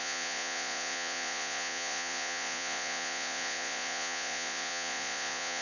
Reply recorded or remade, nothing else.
remade